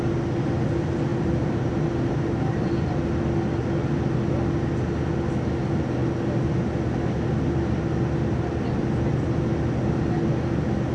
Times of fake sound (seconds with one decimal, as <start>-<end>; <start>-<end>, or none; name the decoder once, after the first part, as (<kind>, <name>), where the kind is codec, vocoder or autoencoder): 1.1-1.7 (vocoder, BigVGAN v2)